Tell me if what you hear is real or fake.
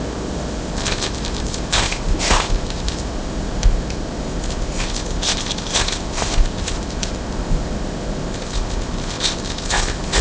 fake